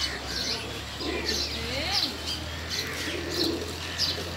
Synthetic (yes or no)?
no